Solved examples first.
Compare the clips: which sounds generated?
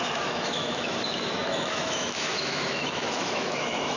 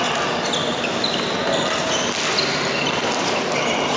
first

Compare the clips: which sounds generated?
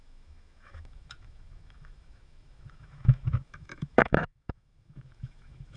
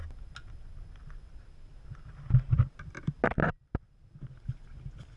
first